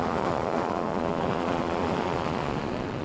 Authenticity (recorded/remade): remade